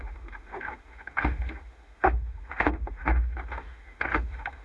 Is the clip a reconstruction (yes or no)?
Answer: yes